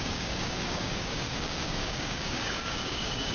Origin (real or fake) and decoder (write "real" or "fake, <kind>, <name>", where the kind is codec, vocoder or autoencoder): fake, codec, DAC